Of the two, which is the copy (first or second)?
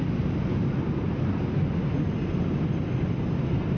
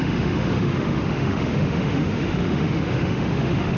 second